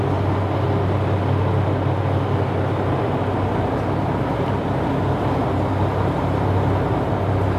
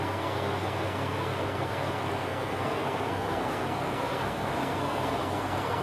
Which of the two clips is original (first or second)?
first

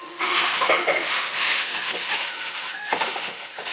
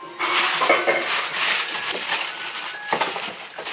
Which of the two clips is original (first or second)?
second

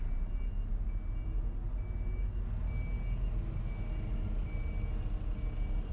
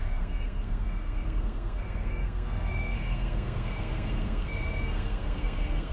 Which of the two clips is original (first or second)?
first